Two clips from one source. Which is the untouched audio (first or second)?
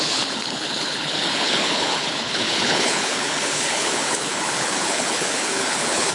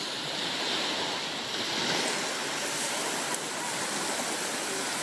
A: second